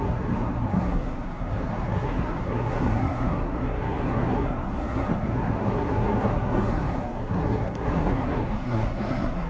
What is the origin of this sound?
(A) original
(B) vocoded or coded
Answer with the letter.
B